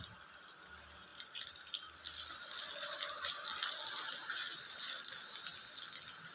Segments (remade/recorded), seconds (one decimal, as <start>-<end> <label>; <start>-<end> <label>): 0.0-1.1 recorded; 1.1-2.6 remade; 2.6-4.5 recorded; 4.5-5.1 remade; 5.1-6.3 recorded

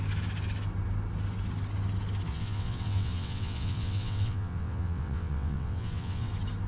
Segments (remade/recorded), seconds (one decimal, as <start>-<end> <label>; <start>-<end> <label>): 0.0-2.3 recorded; 2.3-6.3 remade; 6.3-6.7 recorded

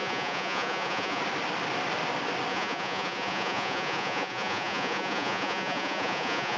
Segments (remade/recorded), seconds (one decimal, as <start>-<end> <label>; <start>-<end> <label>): 0.0-1.2 remade; 1.2-2.5 recorded; 2.5-6.6 remade

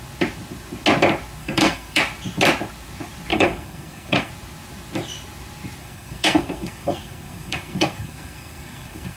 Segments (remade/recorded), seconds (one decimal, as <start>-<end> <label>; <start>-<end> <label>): 0.0-1.4 recorded; 1.4-2.0 remade; 2.0-3.3 recorded; 3.3-4.3 remade; 4.3-5.8 recorded; 5.8-9.2 remade

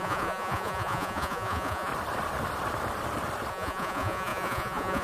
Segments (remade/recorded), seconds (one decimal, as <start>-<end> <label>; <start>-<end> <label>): 0.0-1.9 remade; 1.9-3.5 recorded; 3.5-5.0 remade

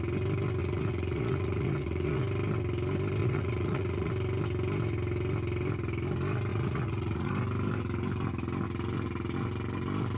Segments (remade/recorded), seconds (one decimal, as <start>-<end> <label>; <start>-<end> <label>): 0.0-0.6 recorded; 0.6-2.2 remade; 2.2-3.2 recorded; 3.2-4.1 remade; 4.1-6.5 recorded; 6.5-7.3 remade; 7.3-10.2 recorded

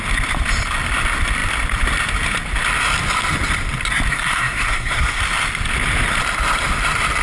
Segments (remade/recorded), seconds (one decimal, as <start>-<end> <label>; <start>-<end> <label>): 0.0-4.1 recorded; 4.1-5.2 remade; 5.2-7.2 recorded